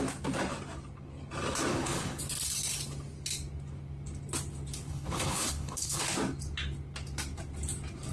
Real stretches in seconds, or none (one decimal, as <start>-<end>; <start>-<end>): 0.0-1.7; 2.2-4.9; 6.0-8.1